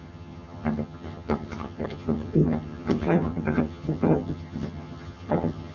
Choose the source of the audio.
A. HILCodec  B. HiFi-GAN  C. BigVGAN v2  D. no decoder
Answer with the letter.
B